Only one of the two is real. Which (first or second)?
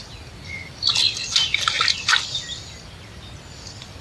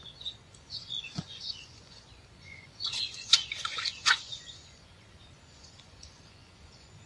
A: first